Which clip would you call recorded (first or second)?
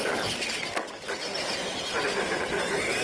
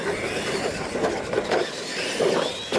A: first